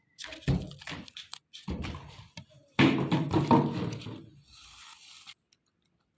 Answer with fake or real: real